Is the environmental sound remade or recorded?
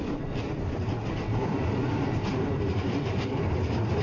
recorded